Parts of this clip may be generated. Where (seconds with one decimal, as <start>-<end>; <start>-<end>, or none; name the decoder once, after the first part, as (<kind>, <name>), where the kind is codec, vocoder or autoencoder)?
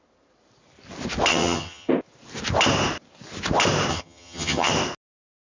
1.3-1.9 (vocoder, HiFi-GAN); 3.9-4.7